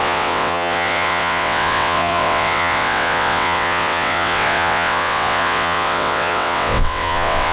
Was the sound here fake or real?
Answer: fake